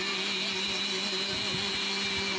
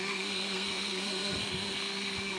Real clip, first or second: first